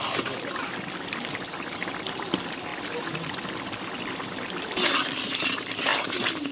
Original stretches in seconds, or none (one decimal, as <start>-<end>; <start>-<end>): 0.0-6.5